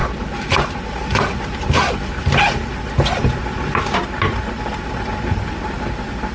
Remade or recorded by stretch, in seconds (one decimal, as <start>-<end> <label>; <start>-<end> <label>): 0.0-6.3 recorded